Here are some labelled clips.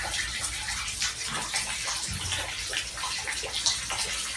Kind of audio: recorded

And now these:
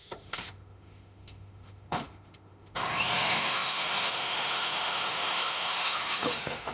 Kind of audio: remade